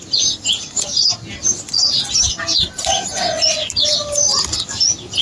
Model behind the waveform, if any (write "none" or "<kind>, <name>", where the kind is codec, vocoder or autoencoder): none